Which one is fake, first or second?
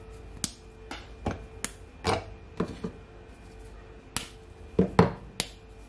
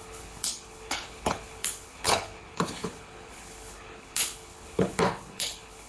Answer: second